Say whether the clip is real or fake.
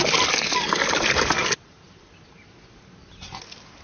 real